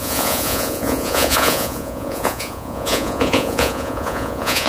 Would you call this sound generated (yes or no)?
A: yes